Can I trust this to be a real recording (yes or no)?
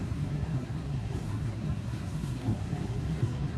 no